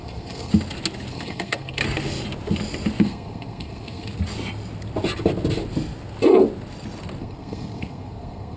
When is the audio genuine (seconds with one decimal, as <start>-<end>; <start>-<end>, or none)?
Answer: 0.5-1.1; 1.8-3.0; 4.1-7.2